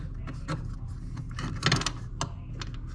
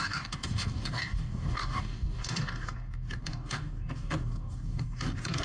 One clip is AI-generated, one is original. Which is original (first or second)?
first